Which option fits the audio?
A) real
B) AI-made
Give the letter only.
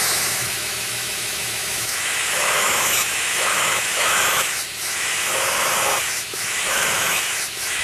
B